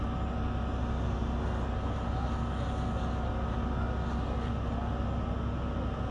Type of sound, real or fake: real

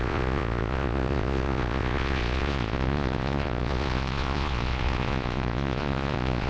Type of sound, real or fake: fake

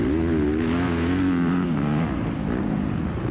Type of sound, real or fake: real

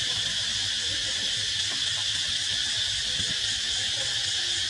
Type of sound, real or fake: real